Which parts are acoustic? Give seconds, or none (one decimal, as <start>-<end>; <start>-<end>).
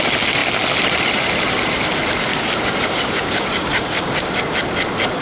0.0-2.3; 4.4-5.2